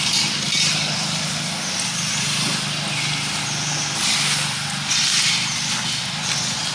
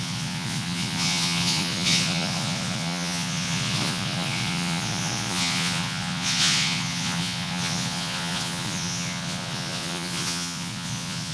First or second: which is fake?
second